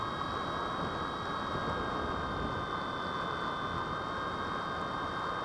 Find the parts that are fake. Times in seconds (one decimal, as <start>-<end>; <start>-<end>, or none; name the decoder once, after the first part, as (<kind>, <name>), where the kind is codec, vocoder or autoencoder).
none